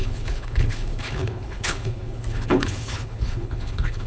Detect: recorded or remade remade